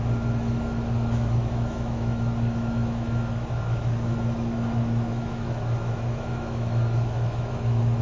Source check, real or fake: fake